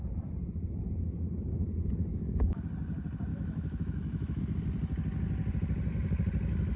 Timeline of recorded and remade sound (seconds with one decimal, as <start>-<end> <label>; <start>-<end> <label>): 0.0-2.1 recorded; 2.1-2.7 remade; 2.7-3.3 recorded; 3.3-4.4 remade; 4.4-6.8 recorded